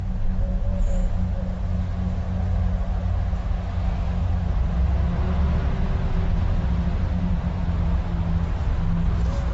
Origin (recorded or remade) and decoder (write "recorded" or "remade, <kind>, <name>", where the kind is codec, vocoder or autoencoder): recorded